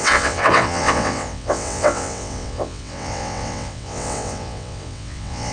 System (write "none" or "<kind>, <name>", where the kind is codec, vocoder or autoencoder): vocoder, WaveNeXt